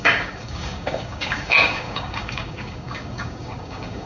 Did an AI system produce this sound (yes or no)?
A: yes